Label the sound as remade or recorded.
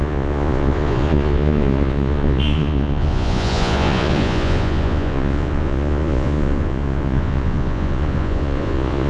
remade